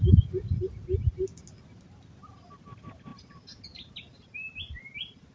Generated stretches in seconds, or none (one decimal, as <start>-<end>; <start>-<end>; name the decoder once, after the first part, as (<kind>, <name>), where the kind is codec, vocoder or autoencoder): none